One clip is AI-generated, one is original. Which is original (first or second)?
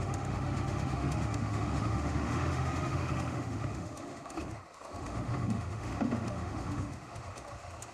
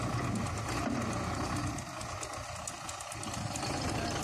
second